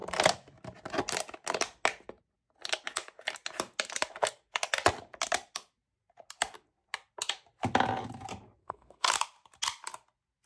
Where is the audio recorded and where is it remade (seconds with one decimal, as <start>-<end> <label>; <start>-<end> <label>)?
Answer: 0.0-8.6 recorded; 8.6-9.1 remade; 9.1-10.5 recorded